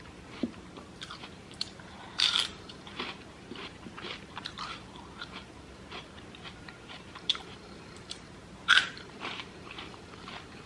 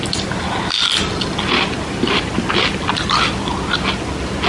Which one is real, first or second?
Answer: second